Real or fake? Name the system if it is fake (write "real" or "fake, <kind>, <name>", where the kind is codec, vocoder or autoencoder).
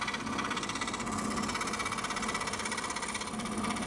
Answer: real